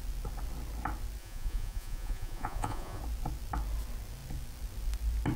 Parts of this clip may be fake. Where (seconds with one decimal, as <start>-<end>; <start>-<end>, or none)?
1.2-3.0